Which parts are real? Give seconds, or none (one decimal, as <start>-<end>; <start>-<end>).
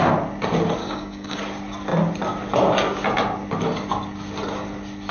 0.0-0.8; 1.4-5.1